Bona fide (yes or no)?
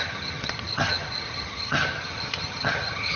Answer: no